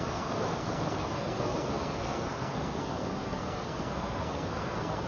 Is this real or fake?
fake